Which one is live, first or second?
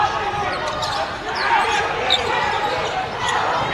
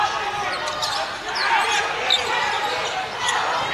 second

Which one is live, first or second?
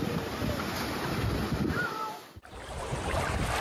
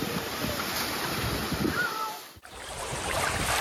first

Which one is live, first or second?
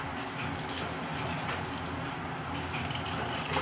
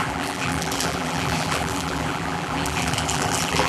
first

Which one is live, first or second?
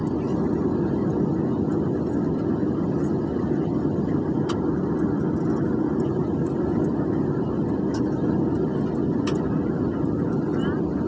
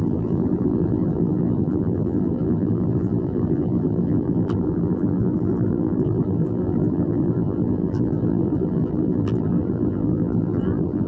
first